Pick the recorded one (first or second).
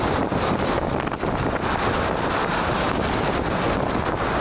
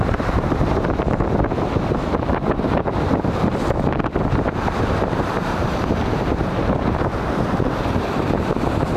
first